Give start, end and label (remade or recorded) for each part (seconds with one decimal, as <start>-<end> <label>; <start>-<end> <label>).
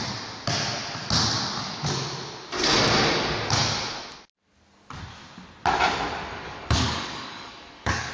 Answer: 0.0-6.3 recorded; 6.3-8.1 remade